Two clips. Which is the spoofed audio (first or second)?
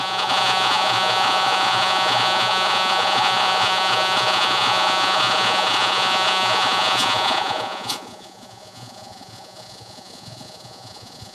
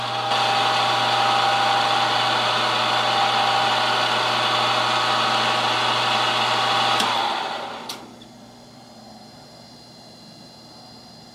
first